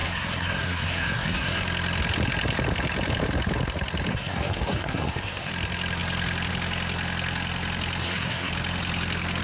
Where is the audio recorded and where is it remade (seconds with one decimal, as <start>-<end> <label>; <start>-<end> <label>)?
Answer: 0.0-1.6 remade; 1.6-4.1 recorded; 4.1-5.5 remade; 5.5-8.0 recorded; 8.0-8.5 remade; 8.5-9.4 recorded